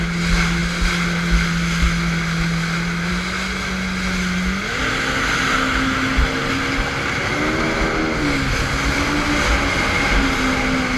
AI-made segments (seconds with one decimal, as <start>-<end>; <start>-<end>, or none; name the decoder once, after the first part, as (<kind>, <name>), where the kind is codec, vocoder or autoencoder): none